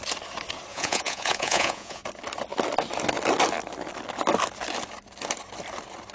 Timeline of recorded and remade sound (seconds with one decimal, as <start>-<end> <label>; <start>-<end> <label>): 0.0-0.7 recorded; 0.7-2.0 remade; 2.0-6.1 recorded